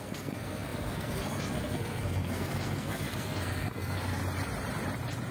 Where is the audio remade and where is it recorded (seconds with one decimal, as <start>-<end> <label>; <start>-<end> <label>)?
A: 0.0-4.2 remade; 4.2-5.3 recorded